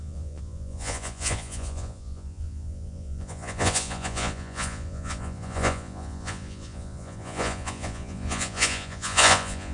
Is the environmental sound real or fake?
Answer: fake